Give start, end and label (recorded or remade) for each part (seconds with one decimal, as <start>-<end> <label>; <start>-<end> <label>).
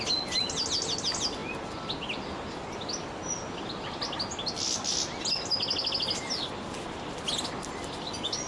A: 0.0-8.5 recorded